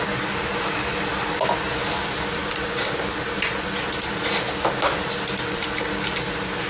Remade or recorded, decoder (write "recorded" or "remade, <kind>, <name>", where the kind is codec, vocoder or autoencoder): recorded